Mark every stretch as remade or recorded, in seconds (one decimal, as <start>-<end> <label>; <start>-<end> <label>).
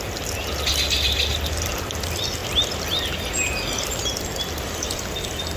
0.0-5.6 recorded